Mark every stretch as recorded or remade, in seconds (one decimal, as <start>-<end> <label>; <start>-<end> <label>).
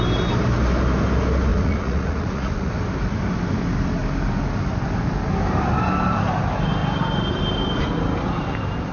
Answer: 0.0-1.5 recorded; 1.5-2.7 remade; 2.7-8.9 recorded